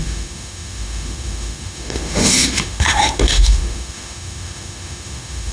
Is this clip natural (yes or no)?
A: no